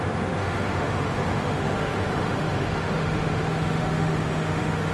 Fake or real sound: fake